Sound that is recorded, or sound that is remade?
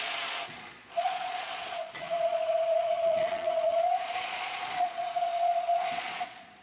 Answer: remade